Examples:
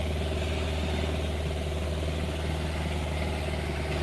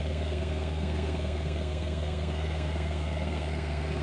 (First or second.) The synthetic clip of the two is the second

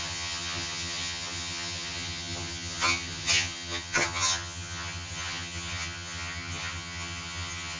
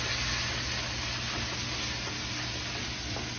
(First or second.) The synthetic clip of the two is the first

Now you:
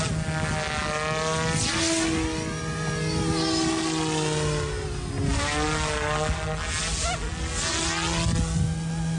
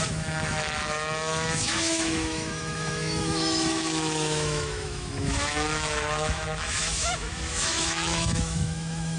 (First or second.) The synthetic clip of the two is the second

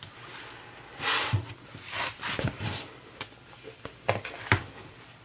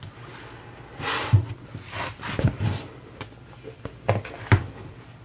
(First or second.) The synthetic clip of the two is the first